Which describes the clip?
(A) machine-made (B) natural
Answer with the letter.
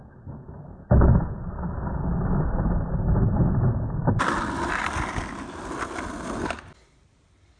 B